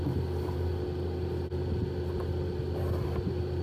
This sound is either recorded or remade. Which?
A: recorded